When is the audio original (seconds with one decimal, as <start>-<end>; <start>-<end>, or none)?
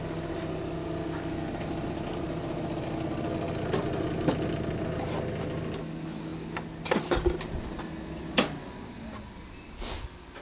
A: 0.0-10.4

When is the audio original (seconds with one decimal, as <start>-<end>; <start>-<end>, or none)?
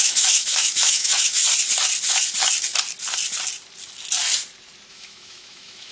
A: 1.4-4.9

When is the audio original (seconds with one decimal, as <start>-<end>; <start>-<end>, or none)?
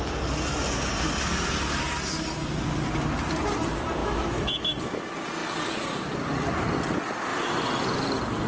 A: 0.0-4.0; 4.7-8.5